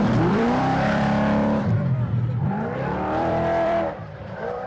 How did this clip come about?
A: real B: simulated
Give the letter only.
B